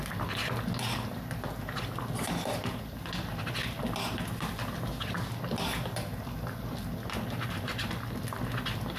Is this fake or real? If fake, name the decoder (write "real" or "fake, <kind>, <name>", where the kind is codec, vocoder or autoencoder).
real